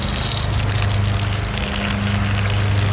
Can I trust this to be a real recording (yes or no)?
yes